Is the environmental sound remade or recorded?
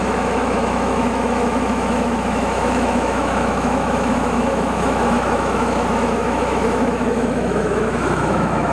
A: remade